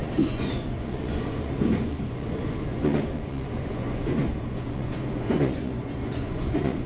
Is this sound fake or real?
fake